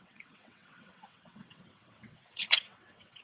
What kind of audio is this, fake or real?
fake